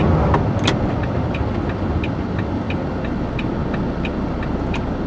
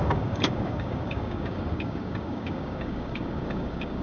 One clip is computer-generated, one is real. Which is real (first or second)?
first